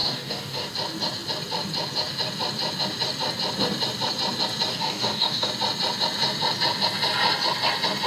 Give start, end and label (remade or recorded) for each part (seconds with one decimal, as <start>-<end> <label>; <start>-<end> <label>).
0.0-0.7 remade; 0.7-4.7 recorded; 4.7-5.5 remade; 5.5-8.1 recorded